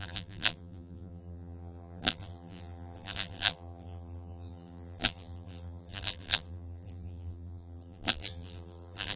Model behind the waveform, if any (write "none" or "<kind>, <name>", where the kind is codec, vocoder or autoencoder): vocoder, BigVGAN v2